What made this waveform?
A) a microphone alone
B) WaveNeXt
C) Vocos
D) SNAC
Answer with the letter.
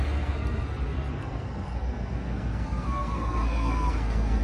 D